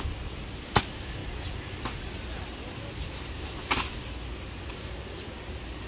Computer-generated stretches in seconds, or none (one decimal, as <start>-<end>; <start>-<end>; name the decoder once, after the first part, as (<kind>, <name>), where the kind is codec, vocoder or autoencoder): none